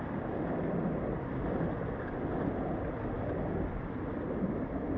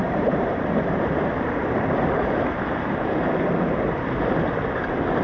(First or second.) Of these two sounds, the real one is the first